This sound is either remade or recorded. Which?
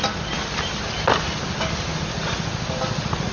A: recorded